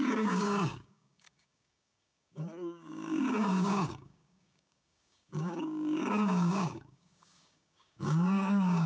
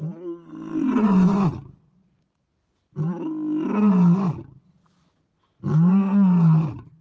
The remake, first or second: first